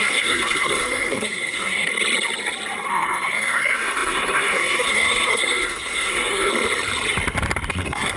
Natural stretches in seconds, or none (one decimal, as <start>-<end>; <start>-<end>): 1.9-2.9; 6.5-7.7